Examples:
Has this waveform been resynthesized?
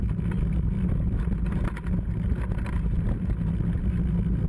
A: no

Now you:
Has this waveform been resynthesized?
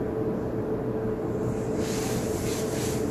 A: no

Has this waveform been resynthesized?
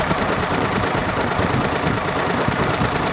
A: yes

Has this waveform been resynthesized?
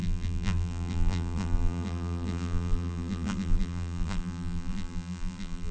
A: yes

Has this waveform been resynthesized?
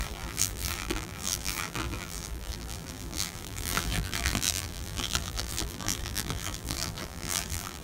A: yes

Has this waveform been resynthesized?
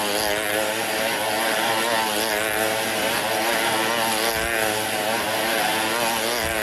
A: no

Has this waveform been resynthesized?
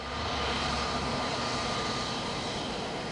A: yes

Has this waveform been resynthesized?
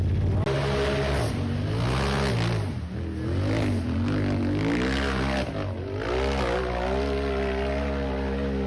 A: no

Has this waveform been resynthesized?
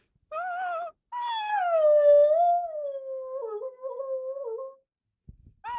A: no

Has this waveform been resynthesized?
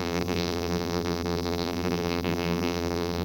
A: yes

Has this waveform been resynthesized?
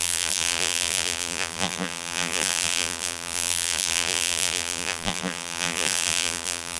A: yes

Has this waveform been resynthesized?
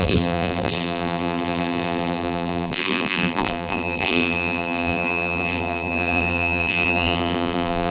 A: yes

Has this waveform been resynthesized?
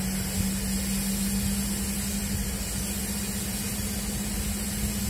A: no